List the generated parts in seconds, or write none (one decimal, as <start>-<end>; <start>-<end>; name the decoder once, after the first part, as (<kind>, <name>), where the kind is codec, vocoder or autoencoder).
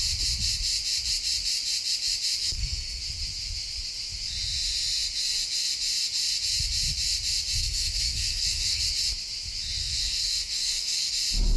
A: 2.4-3.0 (codec, SNAC); 7.6-8.8; 9.8-11.1